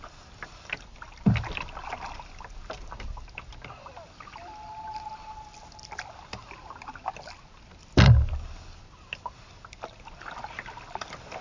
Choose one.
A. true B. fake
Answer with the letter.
A